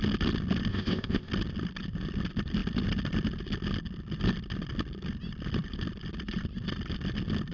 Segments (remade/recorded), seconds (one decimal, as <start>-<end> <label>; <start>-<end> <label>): 0.0-0.7 recorded; 0.7-1.3 remade; 1.3-7.5 recorded